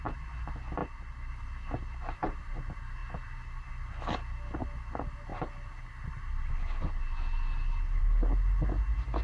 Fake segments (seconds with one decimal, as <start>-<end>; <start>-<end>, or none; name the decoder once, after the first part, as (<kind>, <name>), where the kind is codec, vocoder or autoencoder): none